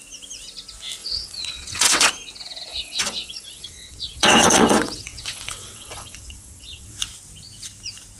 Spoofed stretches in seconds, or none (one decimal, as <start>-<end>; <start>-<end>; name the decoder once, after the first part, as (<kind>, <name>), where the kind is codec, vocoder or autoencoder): 1.0-2.1 (vocoder, WaveNeXt); 2.7-7.0